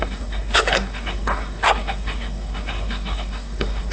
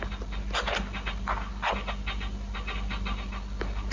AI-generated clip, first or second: first